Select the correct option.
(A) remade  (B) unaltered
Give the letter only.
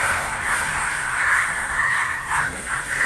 A